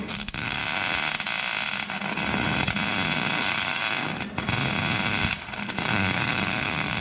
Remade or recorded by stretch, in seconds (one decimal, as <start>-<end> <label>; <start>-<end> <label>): 0.0-0.6 remade; 0.6-3.4 recorded; 3.4-3.8 remade; 3.8-5.3 recorded; 5.3-7.0 remade